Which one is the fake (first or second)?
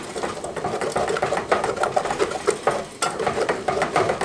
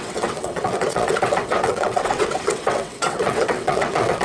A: second